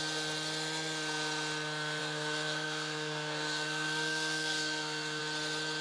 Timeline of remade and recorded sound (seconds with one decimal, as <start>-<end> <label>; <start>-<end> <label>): 0.0-2.0 recorded; 2.0-5.2 remade; 5.2-5.8 recorded